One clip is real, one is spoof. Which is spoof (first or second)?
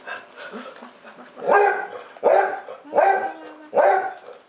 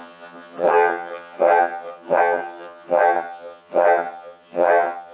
second